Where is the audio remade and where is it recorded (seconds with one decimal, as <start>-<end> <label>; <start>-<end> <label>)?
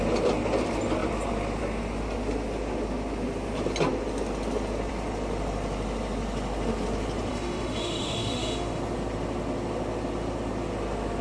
0.0-7.3 recorded; 7.3-8.8 remade; 8.8-11.2 recorded